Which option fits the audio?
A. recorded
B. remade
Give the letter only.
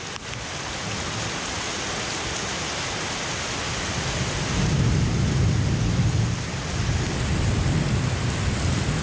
A